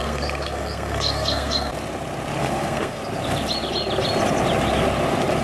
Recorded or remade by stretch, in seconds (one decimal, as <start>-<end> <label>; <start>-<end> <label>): 0.0-1.7 remade; 1.7-2.4 recorded; 2.4-3.0 remade; 3.0-5.4 recorded